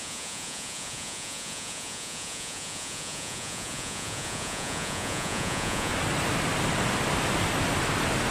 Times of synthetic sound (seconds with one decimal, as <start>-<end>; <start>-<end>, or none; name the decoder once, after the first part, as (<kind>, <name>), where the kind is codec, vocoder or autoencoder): 0.0-5.9 (vocoder, Vocos)